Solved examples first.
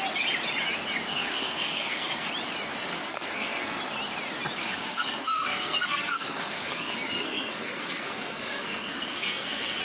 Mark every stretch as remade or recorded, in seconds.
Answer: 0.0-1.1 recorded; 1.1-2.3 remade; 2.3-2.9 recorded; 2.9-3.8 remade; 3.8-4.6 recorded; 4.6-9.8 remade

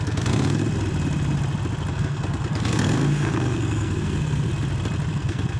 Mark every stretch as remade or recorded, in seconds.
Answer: 0.0-0.6 remade; 0.6-1.9 recorded; 1.9-4.5 remade; 4.5-5.1 recorded; 5.1-5.6 remade

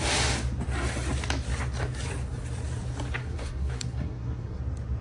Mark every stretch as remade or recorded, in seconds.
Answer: 0.0-3.2 recorded; 3.2-4.6 remade; 4.6-5.0 recorded